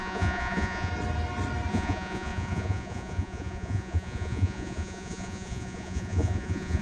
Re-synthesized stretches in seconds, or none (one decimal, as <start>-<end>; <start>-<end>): 0.0-0.9; 1.7-6.8